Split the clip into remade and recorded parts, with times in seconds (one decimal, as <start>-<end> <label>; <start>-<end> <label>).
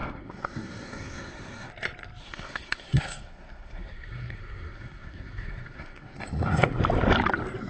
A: 0.0-1.7 remade; 1.7-2.2 recorded; 2.2-6.8 remade; 6.8-7.7 recorded